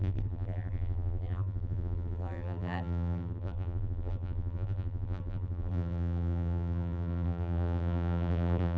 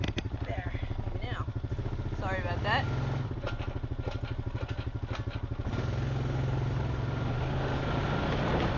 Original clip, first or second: second